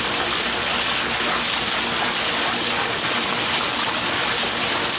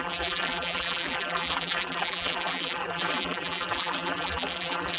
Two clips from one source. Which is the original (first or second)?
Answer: first